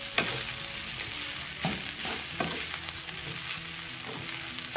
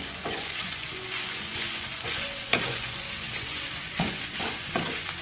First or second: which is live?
first